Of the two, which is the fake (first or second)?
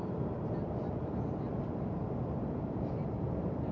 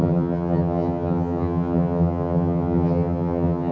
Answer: second